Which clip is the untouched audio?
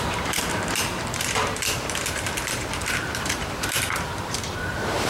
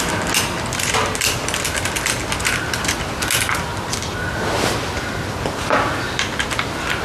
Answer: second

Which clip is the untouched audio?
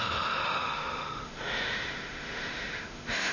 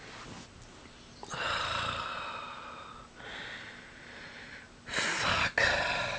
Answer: second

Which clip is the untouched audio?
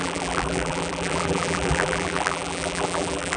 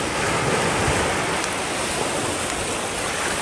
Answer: second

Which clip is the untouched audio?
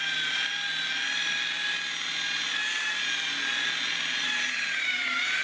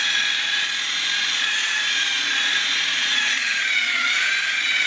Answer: first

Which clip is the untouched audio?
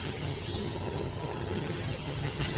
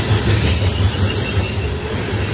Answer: second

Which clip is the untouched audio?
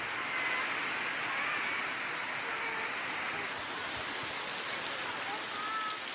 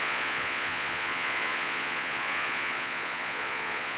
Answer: first